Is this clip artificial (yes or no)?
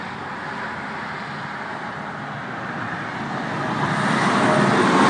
no